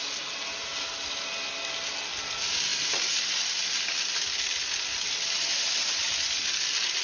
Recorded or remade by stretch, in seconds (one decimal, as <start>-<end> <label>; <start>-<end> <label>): 0.0-7.0 recorded